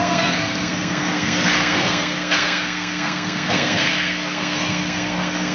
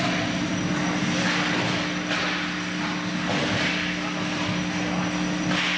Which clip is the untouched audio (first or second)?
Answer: second